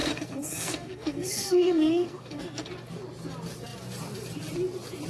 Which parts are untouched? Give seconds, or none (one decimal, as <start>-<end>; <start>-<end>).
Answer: 2.7-5.1